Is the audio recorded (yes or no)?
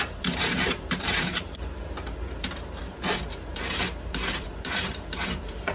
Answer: no